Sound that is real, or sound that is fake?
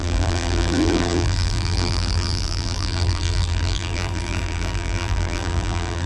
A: fake